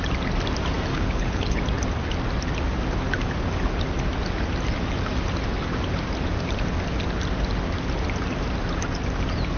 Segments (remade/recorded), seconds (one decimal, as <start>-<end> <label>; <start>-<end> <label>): 0.0-0.9 recorded; 0.9-1.6 remade; 1.6-9.6 recorded